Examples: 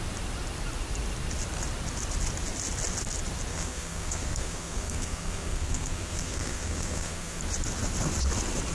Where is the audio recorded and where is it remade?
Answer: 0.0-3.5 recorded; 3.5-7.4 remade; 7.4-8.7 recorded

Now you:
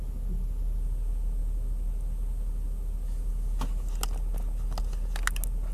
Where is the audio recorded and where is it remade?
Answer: 0.0-5.7 recorded

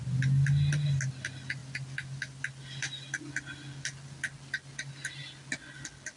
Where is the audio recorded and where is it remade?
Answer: 0.0-1.6 recorded; 1.6-3.2 remade; 3.2-6.2 recorded

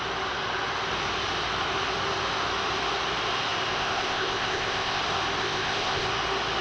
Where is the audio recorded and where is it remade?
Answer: 0.0-3.7 recorded; 3.7-5.0 remade; 5.0-5.4 recorded; 5.4-6.1 remade; 6.1-6.6 recorded

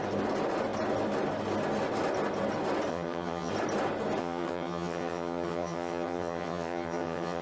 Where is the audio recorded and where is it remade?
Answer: 0.0-2.9 recorded; 2.9-3.5 remade; 3.5-4.2 recorded; 4.2-7.4 remade